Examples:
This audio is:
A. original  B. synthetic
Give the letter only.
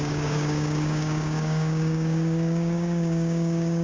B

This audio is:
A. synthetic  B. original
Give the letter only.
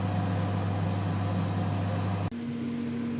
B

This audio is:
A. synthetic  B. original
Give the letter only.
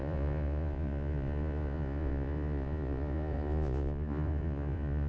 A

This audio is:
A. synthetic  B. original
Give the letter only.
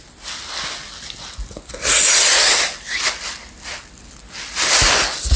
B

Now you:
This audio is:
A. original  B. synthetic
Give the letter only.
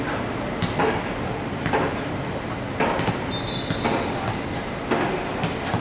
A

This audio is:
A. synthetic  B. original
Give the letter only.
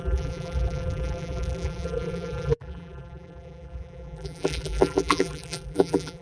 A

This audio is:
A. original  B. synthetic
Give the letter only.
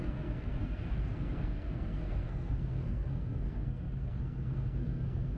B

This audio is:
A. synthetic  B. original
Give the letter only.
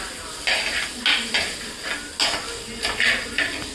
B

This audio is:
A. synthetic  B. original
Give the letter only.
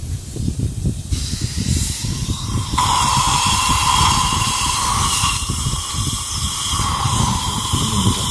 A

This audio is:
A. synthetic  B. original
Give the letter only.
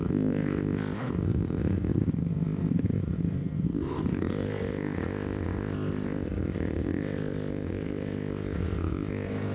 A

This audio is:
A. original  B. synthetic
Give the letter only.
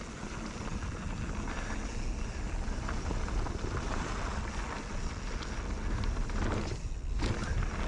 A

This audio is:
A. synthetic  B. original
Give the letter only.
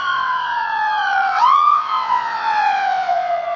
A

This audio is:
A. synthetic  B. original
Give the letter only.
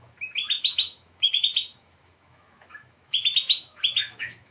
A